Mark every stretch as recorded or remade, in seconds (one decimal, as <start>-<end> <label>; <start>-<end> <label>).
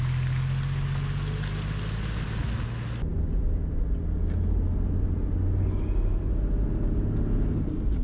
0.0-8.0 recorded